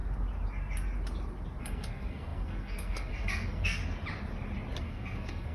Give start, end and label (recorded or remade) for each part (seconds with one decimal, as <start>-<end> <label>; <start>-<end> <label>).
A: 0.0-1.6 recorded; 1.6-3.8 remade; 3.8-4.8 recorded; 4.8-5.5 remade